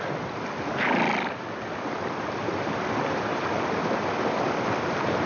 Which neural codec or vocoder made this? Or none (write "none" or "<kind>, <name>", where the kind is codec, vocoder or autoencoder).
none